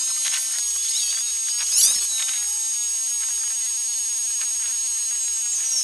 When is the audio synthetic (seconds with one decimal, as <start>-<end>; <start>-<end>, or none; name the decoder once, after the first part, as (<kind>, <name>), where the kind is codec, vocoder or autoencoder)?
none